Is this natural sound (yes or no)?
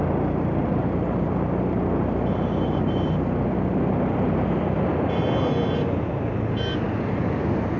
yes